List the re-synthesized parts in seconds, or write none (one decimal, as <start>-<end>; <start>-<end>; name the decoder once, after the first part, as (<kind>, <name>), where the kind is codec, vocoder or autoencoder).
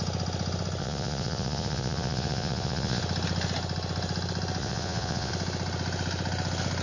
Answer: 0.8-3.0 (vocoder, Vocos); 4.6-5.3